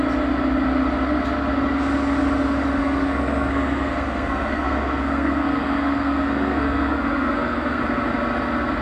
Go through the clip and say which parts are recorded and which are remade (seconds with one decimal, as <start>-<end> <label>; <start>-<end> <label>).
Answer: 0.0-2.8 recorded; 2.8-7.8 remade; 7.8-8.8 recorded